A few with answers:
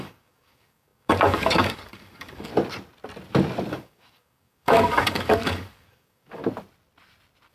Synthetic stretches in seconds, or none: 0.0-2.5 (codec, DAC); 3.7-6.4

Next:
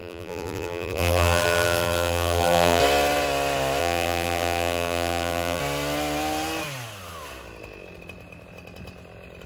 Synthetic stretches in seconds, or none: 0.0-2.8 (vocoder, BigVGAN v2); 3.8-5.6